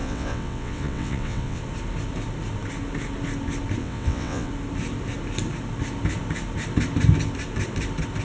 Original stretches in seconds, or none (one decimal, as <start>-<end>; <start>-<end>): 1.6-3.8; 4.5-8.2